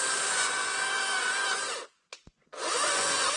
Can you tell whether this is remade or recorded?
remade